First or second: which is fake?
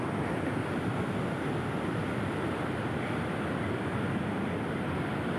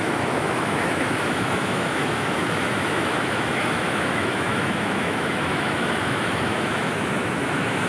second